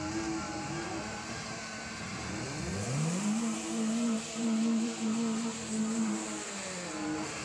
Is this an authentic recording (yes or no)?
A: no